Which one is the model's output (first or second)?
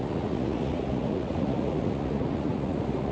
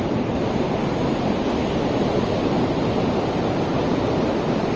first